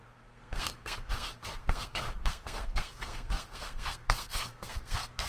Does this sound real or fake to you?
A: fake